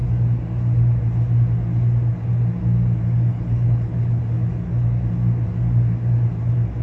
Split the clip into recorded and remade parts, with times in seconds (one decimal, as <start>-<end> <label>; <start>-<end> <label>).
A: 0.0-3.3 recorded; 3.3-4.2 remade; 4.2-6.8 recorded